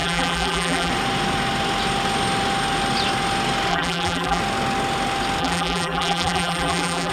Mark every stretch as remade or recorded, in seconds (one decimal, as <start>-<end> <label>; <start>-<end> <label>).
0.0-0.9 remade; 0.9-3.7 recorded; 3.7-4.4 remade; 4.4-5.4 recorded; 5.4-7.1 remade